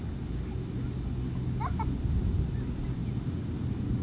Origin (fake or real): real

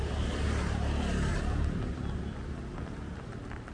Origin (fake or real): real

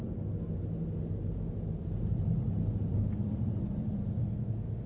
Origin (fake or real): real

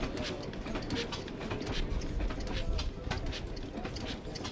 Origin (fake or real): real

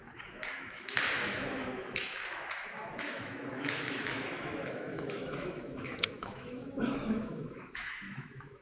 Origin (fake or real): fake